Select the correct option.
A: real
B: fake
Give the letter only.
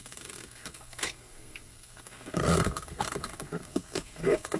B